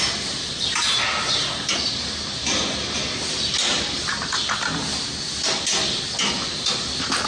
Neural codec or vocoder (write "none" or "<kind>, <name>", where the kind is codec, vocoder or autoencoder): none